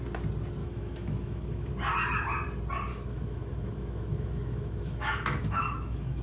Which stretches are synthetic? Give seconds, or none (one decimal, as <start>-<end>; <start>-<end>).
0.6-1.7; 2.9-6.2